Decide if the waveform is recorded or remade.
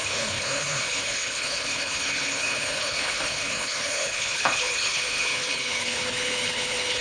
remade